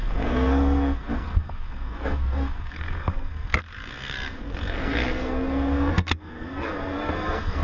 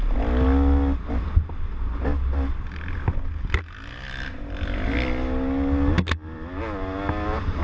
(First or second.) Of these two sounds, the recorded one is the second